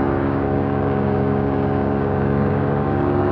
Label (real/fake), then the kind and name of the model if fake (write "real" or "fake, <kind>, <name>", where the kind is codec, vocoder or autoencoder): fake, codec, DAC